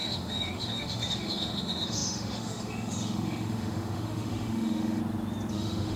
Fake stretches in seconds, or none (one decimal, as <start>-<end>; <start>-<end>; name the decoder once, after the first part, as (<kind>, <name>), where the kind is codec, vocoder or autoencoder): 0.0-5.0 (autoencoder, DAC-VAE); 5.5-6.0